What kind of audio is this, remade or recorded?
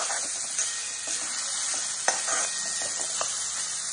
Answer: recorded